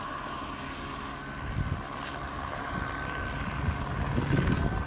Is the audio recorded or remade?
recorded